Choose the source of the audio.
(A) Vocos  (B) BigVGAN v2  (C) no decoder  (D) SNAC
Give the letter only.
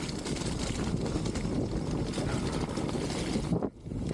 C